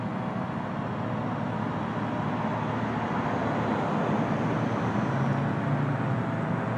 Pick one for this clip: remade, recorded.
recorded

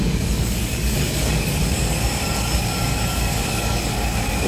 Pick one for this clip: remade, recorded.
remade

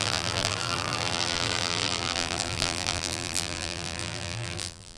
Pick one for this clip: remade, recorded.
remade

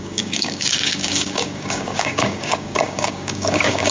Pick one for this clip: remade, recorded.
remade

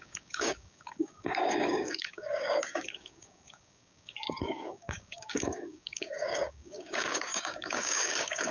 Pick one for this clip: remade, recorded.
remade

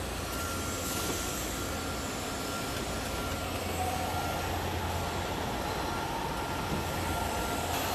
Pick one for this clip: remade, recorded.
recorded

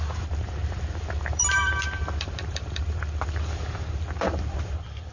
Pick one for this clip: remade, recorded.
remade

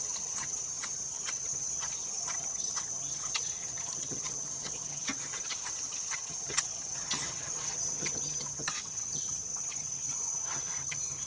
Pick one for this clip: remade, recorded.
remade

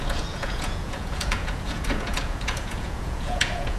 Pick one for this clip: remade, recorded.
remade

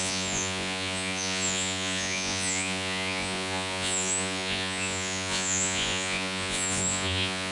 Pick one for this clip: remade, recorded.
remade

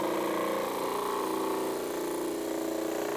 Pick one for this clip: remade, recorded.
recorded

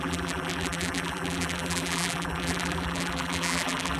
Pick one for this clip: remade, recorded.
remade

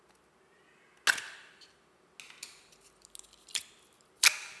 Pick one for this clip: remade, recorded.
recorded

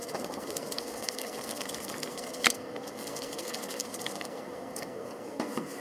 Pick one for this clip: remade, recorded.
remade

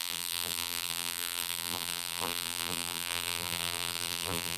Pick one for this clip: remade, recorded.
remade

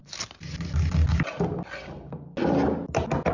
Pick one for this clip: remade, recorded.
recorded